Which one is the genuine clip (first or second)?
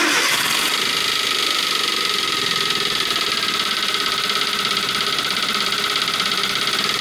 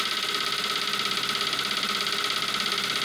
second